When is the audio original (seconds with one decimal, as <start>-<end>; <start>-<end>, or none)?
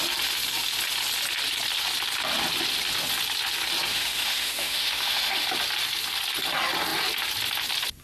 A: 0.0-3.9; 5.5-8.0